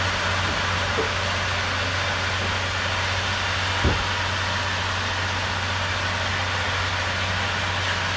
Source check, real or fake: real